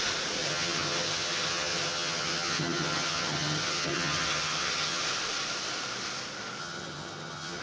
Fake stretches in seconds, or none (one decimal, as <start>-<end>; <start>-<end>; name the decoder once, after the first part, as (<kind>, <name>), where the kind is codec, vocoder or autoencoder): 0.4-5.0 (vocoder, HiFi-GAN); 6.6-7.6